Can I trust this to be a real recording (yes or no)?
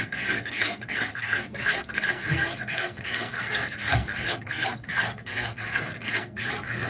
no